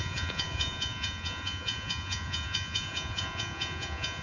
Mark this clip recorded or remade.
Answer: remade